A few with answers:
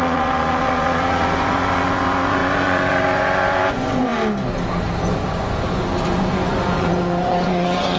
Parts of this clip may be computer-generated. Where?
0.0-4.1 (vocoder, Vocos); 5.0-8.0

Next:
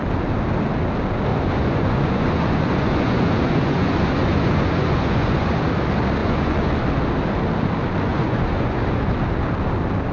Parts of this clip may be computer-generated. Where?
1.3-5.7 (vocoder, Vocos); 6.2-6.8; 8.1-9.1

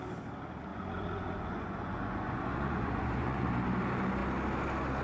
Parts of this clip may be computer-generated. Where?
0.7-3.5 (vocoder, Vocos)